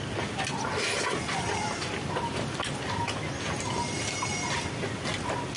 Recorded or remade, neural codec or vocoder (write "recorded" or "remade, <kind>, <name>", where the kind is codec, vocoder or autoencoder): recorded